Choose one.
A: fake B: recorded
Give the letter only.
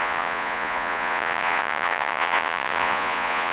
A